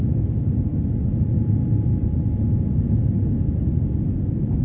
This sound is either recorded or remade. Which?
recorded